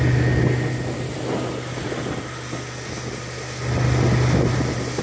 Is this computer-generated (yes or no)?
no